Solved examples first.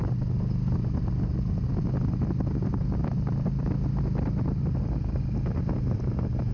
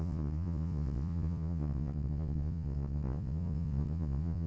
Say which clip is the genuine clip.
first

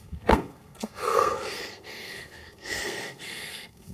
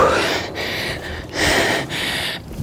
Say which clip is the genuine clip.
second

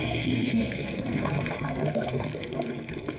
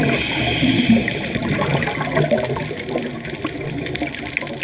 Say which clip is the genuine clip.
second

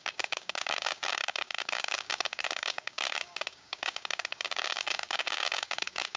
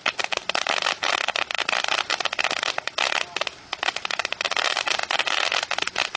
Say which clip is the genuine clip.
second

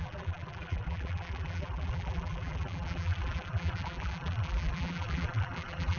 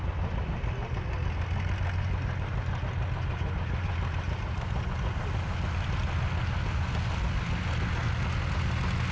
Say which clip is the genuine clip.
second